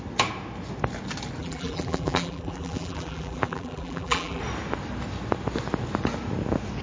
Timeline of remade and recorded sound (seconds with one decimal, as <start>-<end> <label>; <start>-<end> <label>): 0.0-1.4 recorded; 1.4-4.4 remade; 4.4-6.8 recorded